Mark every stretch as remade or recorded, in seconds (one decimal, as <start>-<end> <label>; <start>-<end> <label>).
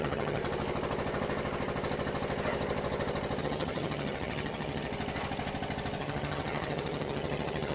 0.0-0.4 remade; 0.4-3.4 recorded; 3.4-4.9 remade; 4.9-6.0 recorded; 6.0-7.7 remade